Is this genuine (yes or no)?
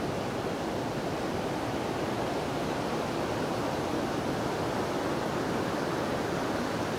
yes